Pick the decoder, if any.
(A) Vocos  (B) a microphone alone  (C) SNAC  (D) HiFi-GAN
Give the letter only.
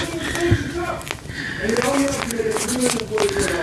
B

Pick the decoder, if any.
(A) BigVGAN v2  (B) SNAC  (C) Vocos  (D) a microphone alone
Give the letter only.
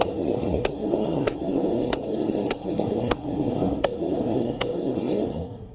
B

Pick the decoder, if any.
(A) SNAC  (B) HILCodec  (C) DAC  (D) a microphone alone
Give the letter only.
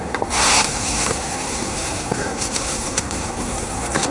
A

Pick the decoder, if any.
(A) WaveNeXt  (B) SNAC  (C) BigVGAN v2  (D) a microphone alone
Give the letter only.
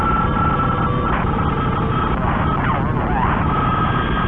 D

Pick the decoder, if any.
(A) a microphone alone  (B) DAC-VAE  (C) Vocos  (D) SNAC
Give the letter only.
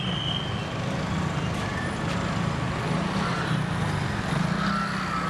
A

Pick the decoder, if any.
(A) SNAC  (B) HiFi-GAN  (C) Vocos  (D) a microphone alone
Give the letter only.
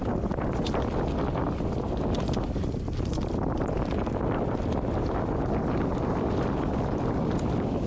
D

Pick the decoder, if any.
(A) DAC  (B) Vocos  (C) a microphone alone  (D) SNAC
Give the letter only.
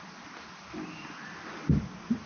C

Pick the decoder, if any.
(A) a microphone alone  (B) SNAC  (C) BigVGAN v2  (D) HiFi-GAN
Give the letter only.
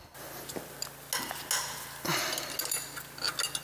A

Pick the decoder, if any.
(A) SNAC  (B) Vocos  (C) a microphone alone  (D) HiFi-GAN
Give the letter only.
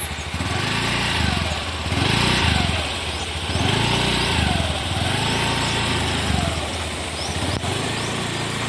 C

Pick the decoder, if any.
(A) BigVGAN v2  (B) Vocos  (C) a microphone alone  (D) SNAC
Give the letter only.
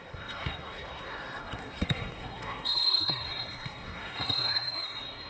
D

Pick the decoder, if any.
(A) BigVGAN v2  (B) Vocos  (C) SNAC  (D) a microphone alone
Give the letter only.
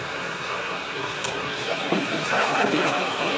C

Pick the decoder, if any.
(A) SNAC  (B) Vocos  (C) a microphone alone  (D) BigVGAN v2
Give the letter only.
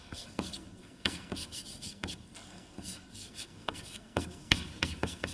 A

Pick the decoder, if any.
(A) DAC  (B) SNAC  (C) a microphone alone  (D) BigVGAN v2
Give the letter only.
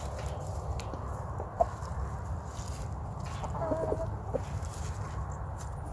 C